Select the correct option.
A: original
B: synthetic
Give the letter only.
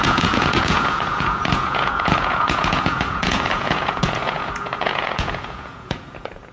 B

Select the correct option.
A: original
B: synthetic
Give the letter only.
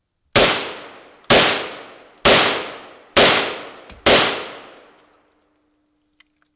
A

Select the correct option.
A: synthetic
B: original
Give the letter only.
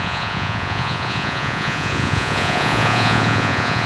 A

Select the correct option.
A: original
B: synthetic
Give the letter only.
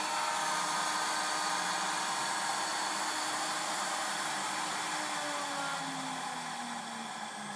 A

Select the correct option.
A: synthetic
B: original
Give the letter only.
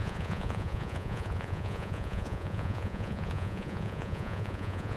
A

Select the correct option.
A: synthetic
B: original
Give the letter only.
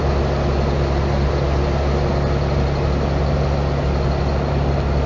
B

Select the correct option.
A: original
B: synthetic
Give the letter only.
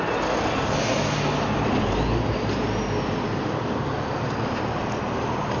A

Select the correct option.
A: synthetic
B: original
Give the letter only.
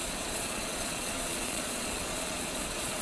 A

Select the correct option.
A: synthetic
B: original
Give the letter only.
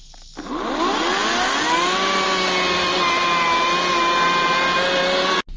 B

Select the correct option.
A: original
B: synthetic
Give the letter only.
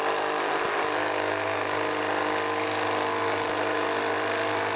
A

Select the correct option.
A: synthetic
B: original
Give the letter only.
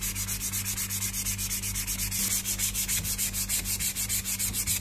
B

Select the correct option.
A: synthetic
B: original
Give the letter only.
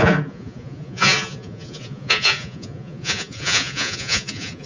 A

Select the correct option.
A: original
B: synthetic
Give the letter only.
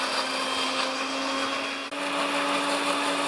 A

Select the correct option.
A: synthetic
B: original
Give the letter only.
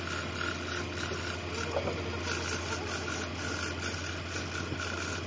B